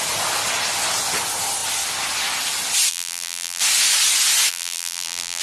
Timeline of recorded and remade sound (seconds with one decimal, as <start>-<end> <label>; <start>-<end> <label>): 0.0-2.9 recorded; 2.9-3.6 remade; 3.6-4.5 recorded; 4.5-5.4 remade